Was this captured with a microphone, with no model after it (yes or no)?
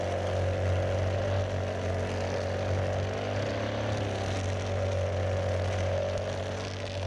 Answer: yes